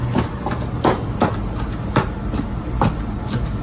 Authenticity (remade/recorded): recorded